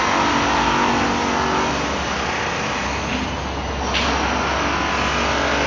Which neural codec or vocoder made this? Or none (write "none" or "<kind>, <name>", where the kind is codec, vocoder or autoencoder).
none